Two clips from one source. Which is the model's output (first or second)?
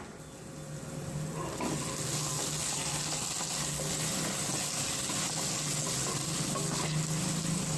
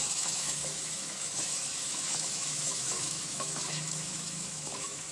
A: second